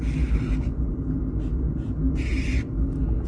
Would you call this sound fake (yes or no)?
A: no